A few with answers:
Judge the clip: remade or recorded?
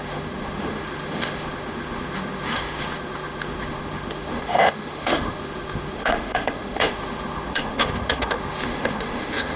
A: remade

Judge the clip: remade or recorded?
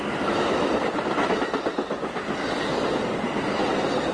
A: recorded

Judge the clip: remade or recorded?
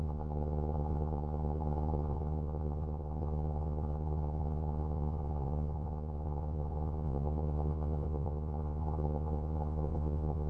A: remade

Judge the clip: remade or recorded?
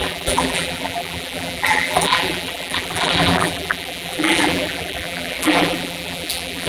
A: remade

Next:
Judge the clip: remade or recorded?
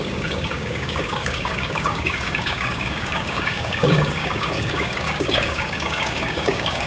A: remade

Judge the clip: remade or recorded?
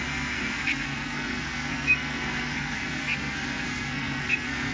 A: remade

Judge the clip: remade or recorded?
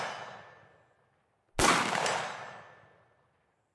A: recorded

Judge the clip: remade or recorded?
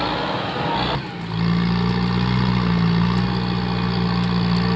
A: recorded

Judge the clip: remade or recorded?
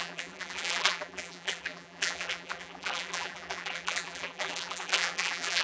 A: remade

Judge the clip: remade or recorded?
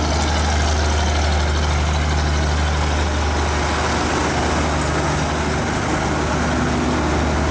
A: recorded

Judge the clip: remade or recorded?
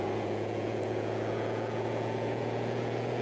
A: remade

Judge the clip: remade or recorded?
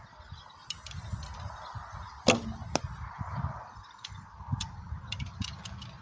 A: recorded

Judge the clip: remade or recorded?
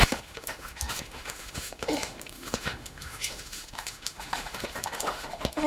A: remade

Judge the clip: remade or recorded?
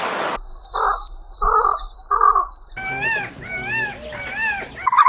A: recorded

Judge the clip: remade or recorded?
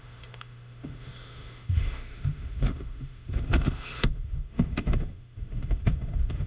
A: remade